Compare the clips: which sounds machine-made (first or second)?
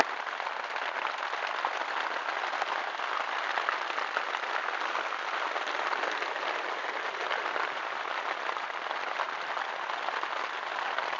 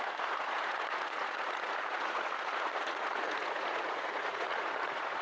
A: second